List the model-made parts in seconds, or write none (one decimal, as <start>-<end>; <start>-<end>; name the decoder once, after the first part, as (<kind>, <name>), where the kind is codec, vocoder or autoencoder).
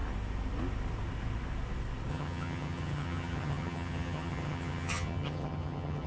2.1-6.1 (vocoder, HiFi-GAN)